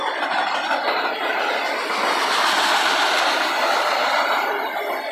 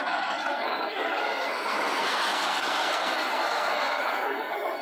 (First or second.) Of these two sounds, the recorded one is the first